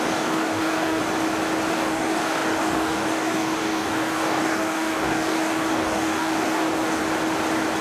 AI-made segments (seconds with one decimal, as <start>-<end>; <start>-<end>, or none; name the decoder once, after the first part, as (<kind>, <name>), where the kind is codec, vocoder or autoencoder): 0.0-1.0 (codec, DAC); 1.7-7.0